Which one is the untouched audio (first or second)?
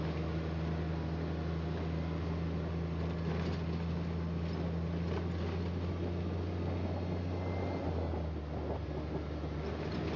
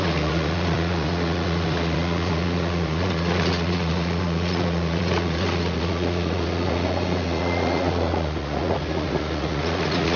first